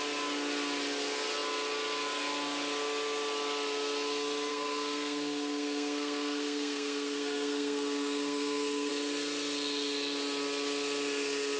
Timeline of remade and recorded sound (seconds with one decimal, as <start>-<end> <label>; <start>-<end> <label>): 0.0-4.5 recorded; 4.5-8.9 remade; 8.9-11.6 recorded